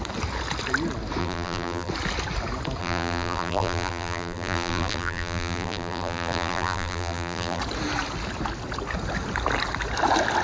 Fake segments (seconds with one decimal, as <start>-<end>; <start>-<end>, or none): 1.2-1.9; 2.8-7.6